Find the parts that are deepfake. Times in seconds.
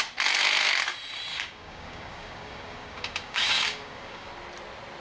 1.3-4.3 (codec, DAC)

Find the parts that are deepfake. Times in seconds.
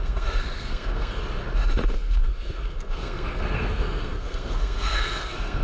0.0-1.2 (codec, SNAC); 1.9-5.6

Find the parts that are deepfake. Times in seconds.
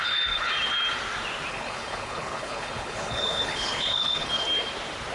0.0-0.5 (codec, HILCodec); 1.5-4.4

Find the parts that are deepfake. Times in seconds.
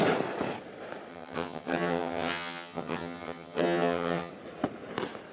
1.1-4.3 (vocoder, HiFi-GAN)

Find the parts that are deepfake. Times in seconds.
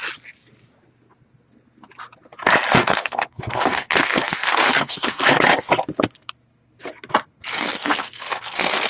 2.8-5.2 (codec, SNAC); 7.5-8.9